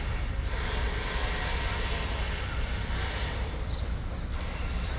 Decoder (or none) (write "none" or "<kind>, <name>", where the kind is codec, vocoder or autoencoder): none